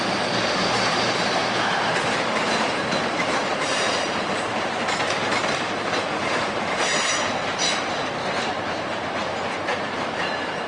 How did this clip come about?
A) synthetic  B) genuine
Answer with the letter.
A